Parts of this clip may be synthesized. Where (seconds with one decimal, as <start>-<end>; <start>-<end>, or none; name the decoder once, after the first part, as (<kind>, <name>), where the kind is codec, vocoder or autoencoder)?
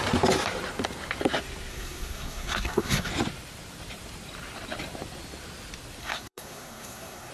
1.7-3.1 (codec, SNAC); 6.0-7.3